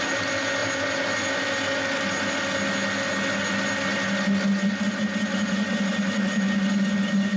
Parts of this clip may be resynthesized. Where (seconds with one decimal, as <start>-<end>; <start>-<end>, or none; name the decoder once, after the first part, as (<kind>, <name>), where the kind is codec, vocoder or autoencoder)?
none